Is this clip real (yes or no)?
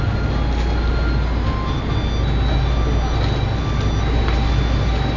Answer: yes